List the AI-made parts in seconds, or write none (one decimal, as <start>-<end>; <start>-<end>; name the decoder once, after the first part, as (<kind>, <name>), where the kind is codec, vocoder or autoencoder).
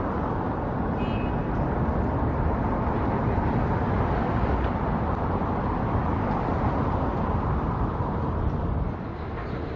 none